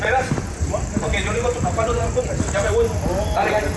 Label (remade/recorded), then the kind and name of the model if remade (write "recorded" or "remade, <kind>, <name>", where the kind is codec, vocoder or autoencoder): remade, vocoder, BigVGAN v2